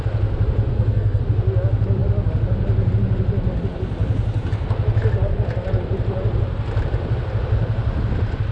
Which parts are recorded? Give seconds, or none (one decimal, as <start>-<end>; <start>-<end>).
0.0-0.7; 1.2-8.5